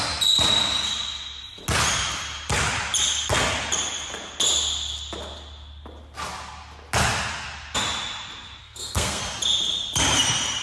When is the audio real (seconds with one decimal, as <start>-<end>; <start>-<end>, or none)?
0.0-8.6; 9.2-10.6